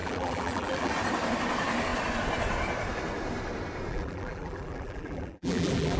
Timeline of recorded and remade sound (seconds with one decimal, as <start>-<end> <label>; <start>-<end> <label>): 0.0-0.9 remade; 0.9-3.9 recorded; 3.9-6.0 remade